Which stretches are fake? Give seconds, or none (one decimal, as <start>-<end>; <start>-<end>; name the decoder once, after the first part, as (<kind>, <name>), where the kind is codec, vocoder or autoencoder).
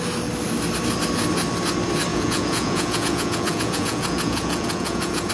2.1-5.3 (vocoder, Vocos)